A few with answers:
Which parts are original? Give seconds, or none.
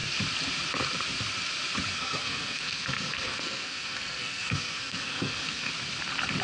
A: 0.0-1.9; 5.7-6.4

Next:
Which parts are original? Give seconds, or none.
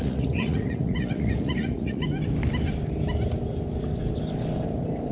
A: 2.0-5.1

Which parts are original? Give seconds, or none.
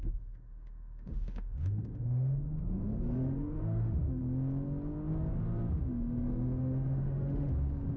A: 4.2-5.8; 7.5-8.0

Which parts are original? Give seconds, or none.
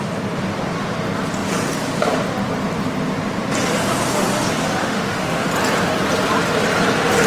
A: 0.0-4.8; 5.5-7.3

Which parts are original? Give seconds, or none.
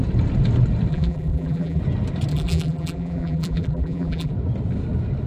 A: 0.0-0.9; 1.8-2.3; 4.3-5.3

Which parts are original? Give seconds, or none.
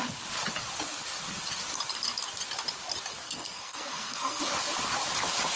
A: 0.0-3.2; 4.4-5.6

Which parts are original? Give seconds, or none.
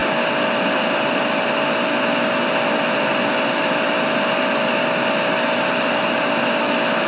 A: 0.0-7.1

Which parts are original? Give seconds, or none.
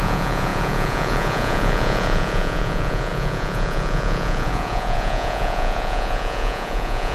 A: none